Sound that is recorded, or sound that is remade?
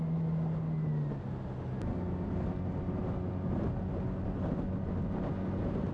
recorded